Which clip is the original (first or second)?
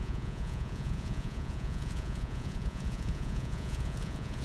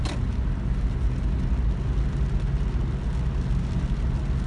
second